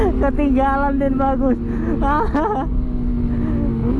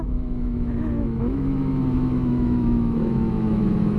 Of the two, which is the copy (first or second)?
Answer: second